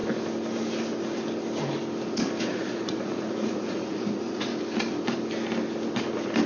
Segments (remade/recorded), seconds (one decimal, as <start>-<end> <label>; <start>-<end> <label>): 0.0-2.4 recorded; 2.4-4.5 remade; 4.5-6.5 recorded